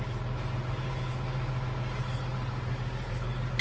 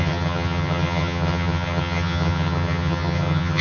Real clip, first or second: first